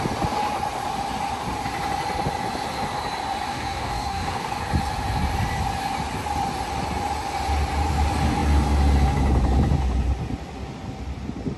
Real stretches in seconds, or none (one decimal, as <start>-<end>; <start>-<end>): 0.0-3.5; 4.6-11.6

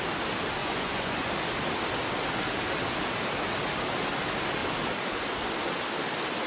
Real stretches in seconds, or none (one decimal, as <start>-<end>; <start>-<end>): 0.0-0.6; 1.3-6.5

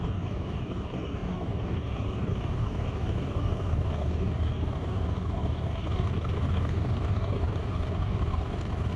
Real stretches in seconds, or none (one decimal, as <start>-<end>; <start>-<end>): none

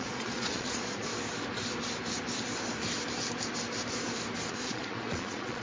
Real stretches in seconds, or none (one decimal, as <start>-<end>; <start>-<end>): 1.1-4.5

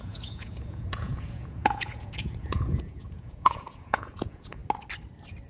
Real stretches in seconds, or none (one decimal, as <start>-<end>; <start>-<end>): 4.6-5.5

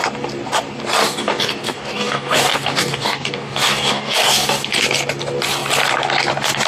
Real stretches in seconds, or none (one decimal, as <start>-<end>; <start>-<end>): 0.0-1.0; 4.7-6.7

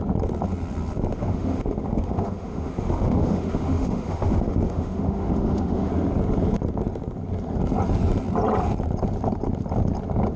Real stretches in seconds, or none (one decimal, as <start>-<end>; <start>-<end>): 0.0-1.1; 5.9-10.4